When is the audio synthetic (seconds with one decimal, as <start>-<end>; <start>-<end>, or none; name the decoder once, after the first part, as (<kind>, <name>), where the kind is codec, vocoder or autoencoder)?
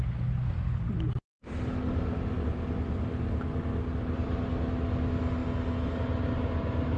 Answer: none